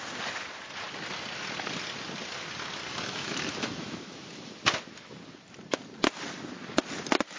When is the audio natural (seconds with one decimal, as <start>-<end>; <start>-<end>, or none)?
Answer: 0.0-2.9; 4.1-7.4